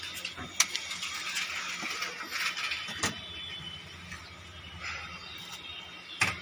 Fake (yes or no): no